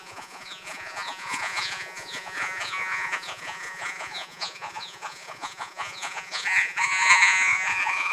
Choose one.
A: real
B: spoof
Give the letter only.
B